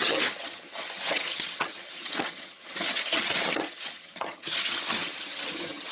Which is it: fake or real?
fake